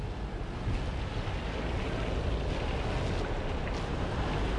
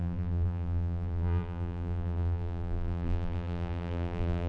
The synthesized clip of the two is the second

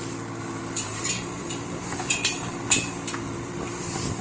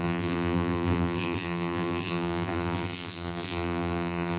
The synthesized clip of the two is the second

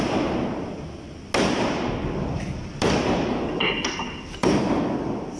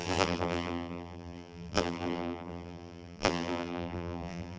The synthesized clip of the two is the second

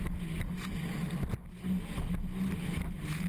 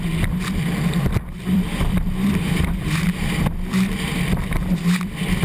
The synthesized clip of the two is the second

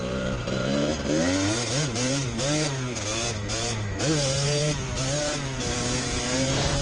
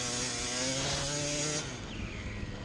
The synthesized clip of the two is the first